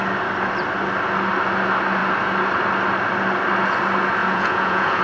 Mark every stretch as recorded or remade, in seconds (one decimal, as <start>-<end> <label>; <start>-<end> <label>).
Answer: 0.0-4.2 recorded; 4.2-5.0 remade